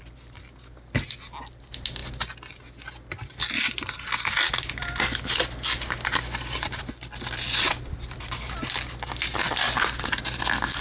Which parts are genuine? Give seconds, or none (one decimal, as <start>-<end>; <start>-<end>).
0.0-10.8